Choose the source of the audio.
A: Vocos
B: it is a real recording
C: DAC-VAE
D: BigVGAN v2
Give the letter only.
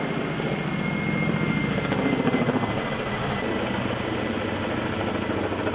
B